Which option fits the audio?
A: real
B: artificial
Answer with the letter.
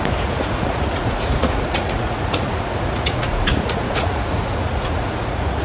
B